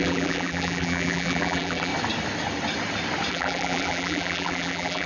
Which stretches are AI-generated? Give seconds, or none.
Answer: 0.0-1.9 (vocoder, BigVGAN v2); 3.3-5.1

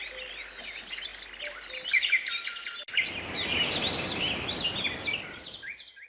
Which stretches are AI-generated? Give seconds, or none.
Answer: none

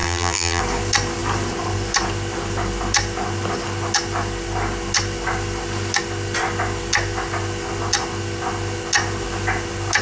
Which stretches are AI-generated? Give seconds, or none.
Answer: 0.0-0.6 (vocoder, BigVGAN v2)

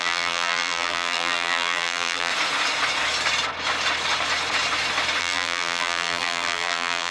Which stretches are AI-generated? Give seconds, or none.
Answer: 0.0-2.3 (vocoder, BigVGAN v2); 5.2-7.1

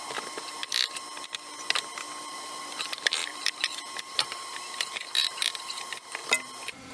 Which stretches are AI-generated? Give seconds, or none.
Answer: 0.0-0.6 (vocoder, BigVGAN v2); 2.3-6.2

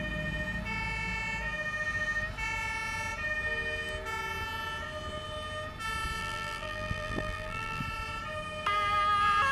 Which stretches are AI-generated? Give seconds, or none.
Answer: 6.2-7.8 (vocoder, BigVGAN v2)